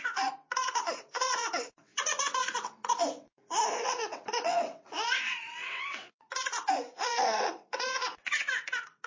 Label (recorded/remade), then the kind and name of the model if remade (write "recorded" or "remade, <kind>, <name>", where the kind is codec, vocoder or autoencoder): remade, vocoder, WaveNeXt